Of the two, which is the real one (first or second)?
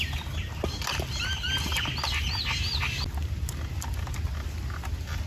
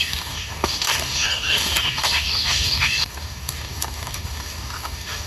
first